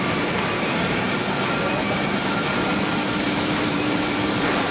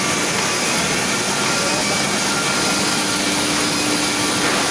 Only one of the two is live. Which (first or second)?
second